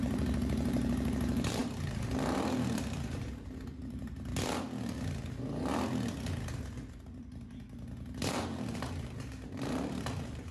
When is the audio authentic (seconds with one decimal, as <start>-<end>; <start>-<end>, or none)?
4.3-8.3